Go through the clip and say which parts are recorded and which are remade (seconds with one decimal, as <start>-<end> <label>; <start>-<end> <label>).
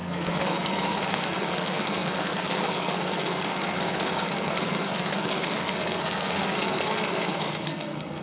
0.0-8.2 remade